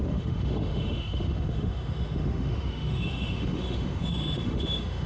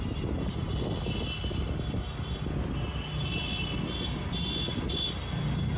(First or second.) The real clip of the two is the second